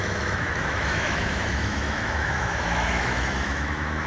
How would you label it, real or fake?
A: fake